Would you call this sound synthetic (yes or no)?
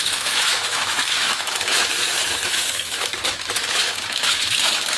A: yes